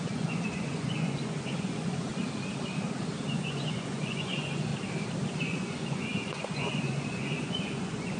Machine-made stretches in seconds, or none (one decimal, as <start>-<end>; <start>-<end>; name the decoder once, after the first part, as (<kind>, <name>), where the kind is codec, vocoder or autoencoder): 0.0-2.1 (vocoder, Vocos); 3.3-4.7; 5.4-8.2